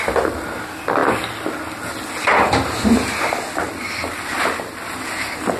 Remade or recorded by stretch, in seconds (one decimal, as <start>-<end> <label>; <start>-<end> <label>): 0.0-5.6 recorded